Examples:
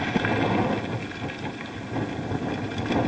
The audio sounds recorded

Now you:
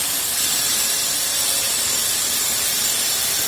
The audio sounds remade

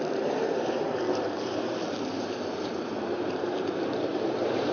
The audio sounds remade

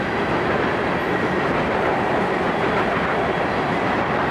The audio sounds remade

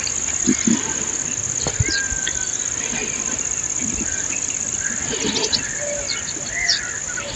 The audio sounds remade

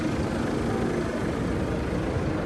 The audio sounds recorded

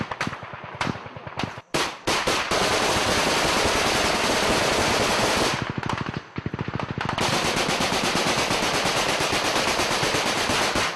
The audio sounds remade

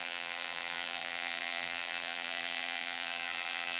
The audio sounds remade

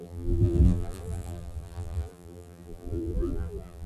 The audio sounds remade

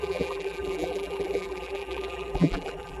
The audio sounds remade